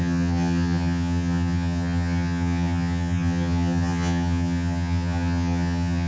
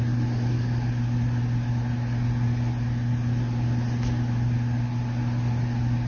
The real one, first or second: second